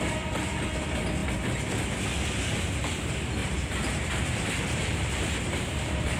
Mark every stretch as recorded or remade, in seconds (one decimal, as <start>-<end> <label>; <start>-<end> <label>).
0.0-3.4 recorded; 3.4-6.2 remade